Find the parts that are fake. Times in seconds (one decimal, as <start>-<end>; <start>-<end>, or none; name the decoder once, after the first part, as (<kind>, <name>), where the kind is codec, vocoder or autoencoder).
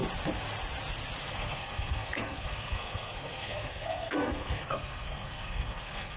1.3-6.2 (codec, SNAC)